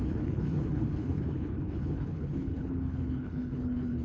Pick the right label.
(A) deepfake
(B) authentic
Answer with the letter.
A